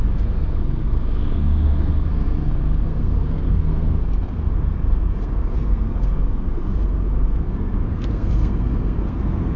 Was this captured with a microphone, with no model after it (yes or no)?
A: no